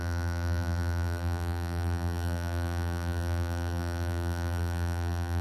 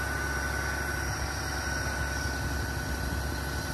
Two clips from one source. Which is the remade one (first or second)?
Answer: first